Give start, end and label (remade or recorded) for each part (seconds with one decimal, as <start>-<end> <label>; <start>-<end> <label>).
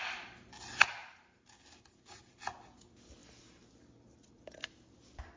0.0-5.4 recorded